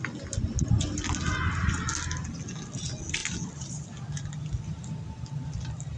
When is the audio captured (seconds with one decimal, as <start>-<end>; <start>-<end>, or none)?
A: 0.0-6.0